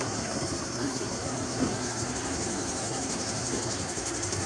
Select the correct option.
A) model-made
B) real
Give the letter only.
A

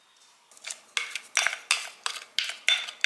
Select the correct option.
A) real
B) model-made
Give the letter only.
A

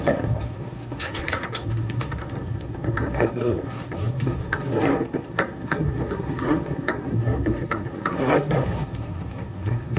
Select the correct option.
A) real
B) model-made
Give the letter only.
B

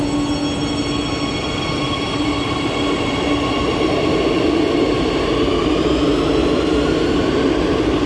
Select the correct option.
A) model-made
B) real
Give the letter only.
B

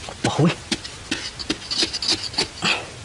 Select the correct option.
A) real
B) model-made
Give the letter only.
A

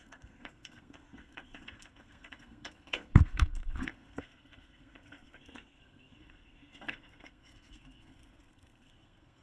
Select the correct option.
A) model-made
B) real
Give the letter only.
A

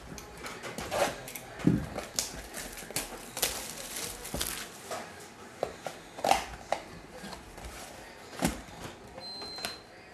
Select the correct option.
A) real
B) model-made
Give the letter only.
A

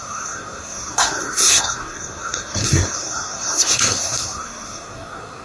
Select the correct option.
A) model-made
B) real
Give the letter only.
A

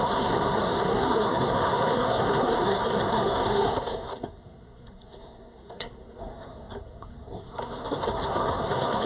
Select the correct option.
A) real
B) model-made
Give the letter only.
B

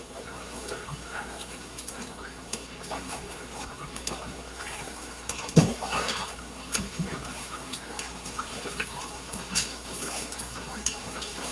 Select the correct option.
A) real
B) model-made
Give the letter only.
B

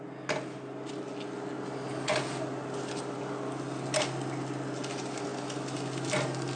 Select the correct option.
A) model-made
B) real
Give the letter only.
B